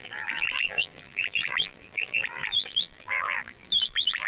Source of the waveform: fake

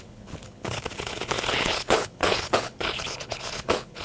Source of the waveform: fake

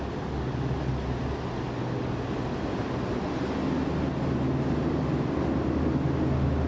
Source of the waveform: real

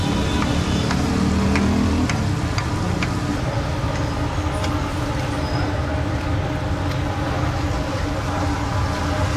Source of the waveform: real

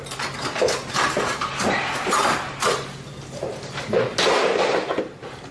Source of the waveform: fake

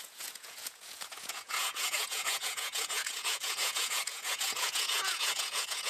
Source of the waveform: fake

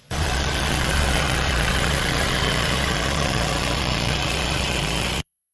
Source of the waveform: fake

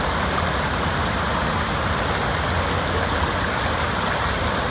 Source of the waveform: real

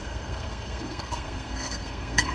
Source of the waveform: fake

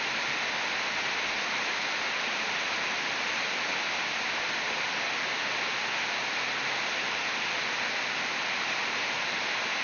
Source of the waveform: real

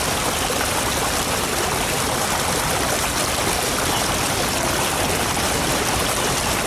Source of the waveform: real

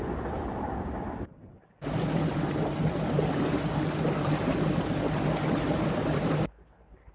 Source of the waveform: real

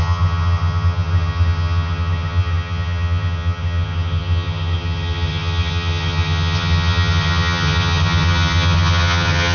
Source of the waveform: fake